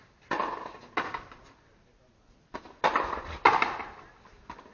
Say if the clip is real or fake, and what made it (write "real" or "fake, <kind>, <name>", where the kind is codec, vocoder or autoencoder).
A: real